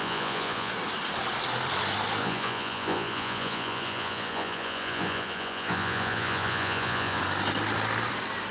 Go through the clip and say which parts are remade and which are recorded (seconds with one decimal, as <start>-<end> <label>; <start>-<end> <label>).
0.0-0.7 remade; 0.7-2.2 recorded; 2.2-7.2 remade; 7.2-8.5 recorded